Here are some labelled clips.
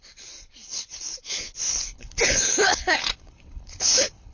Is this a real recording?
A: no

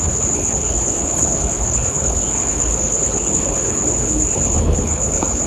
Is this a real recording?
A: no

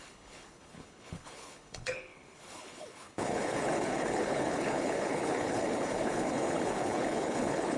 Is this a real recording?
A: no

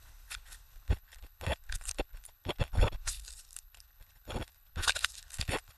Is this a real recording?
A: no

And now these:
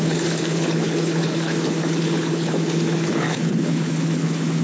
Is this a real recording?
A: no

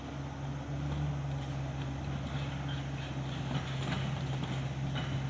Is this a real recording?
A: yes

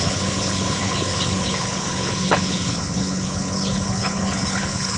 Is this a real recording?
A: no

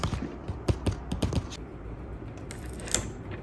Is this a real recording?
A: yes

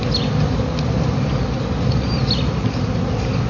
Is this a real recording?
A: yes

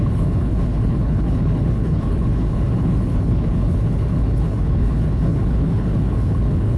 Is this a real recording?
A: no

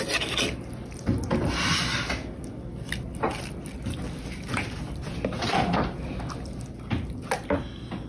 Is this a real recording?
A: yes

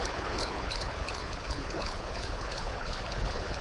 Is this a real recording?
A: no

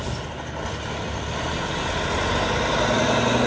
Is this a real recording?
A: yes